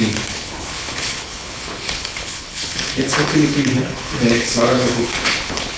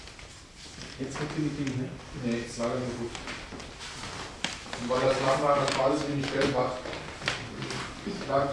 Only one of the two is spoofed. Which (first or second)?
first